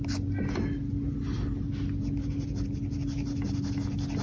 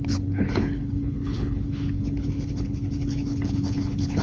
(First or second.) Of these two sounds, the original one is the first